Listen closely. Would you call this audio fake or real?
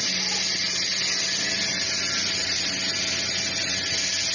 real